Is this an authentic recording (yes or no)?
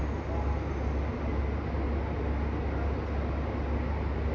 yes